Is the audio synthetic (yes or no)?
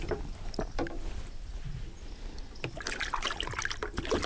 no